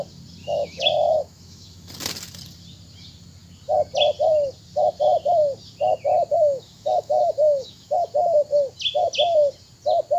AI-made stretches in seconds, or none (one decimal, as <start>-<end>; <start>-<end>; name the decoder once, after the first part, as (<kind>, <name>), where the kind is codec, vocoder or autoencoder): 0.4-1.9 (autoencoder, DAC-VAE); 6.3-8.1